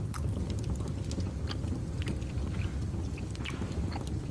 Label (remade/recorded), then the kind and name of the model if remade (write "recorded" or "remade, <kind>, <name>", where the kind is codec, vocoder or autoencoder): recorded